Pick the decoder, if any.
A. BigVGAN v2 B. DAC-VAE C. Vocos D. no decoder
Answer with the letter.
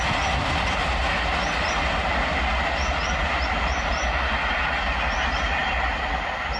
D